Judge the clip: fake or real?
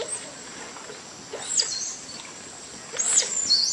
real